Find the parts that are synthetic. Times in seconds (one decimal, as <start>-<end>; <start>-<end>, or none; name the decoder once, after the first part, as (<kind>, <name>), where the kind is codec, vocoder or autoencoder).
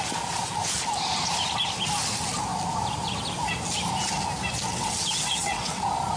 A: 4.7-5.8 (vocoder, WaveNeXt)